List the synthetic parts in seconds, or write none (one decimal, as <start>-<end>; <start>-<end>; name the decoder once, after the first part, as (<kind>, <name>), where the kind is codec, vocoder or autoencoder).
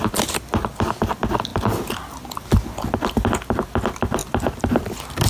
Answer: none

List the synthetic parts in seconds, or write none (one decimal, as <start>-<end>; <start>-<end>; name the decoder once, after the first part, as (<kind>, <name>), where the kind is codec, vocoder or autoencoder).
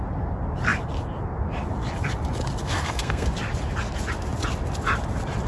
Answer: 2.6-3.3 (codec, SNAC)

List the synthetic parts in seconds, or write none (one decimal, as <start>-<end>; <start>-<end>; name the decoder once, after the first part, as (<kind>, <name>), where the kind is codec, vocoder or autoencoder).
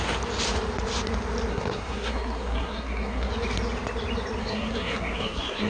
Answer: 1.5-3.3 (codec, SNAC); 4.4-5.7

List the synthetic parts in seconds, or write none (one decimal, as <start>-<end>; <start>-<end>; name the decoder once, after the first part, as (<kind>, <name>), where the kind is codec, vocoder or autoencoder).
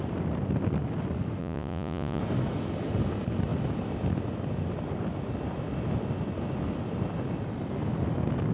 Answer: 1.4-2.2 (vocoder, Vocos)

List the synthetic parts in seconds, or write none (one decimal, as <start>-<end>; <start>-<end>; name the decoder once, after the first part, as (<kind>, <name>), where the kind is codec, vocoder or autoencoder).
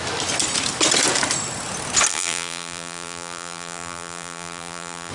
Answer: 2.1-5.1 (vocoder, BigVGAN v2)